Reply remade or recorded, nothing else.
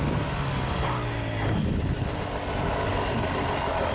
recorded